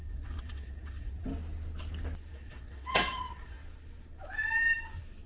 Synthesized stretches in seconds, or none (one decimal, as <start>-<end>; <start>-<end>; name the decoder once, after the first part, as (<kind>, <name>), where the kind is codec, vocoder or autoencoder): 0.0-1.3 (vocoder, WaveNeXt); 2.3-3.6